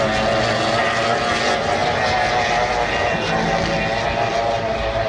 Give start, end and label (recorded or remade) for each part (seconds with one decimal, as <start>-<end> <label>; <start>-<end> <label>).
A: 0.0-5.1 recorded

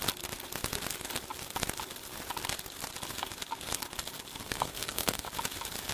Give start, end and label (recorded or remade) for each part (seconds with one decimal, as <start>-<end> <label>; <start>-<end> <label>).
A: 0.0-4.4 recorded; 4.4-5.3 remade; 5.3-5.9 recorded

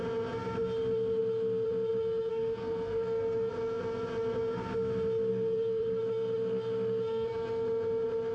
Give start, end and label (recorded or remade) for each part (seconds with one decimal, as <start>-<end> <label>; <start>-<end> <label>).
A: 0.0-2.3 recorded; 2.3-3.5 remade; 3.5-5.3 recorded; 5.3-6.0 remade; 6.0-8.3 recorded

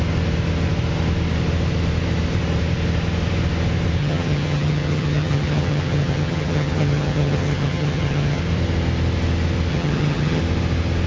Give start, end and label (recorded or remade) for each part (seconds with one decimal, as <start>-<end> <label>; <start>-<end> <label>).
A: 0.0-4.0 recorded; 4.0-8.4 remade; 8.4-9.7 recorded; 9.7-10.4 remade; 10.4-11.1 recorded